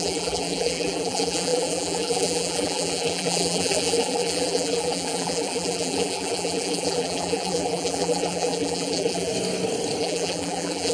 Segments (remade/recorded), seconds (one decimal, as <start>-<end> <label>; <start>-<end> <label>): 0.0-9.3 remade; 9.3-10.0 recorded; 10.0-10.9 remade